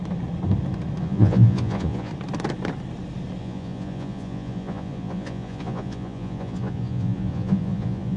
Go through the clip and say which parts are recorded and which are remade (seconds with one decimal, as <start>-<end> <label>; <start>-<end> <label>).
0.0-1.0 recorded; 1.0-2.1 remade; 2.1-3.4 recorded; 3.4-8.2 remade